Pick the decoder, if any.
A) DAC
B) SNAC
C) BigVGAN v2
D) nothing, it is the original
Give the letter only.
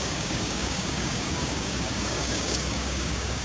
A